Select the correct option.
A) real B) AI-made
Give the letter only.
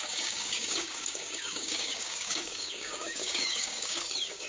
B